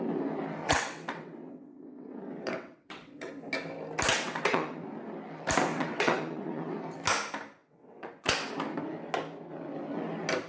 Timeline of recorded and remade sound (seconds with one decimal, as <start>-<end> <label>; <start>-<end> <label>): 0.0-0.6 recorded; 0.6-3.3 remade; 3.3-4.1 recorded; 4.1-4.8 remade; 4.8-5.7 recorded; 5.7-6.7 remade; 6.7-7.6 recorded; 7.6-8.3 remade; 8.3-10.5 recorded